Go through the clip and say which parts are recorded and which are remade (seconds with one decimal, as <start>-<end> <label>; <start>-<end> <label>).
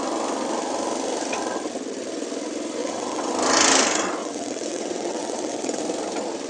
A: 0.0-2.8 recorded; 2.8-3.3 remade; 3.3-4.2 recorded; 4.2-5.8 remade; 5.8-6.5 recorded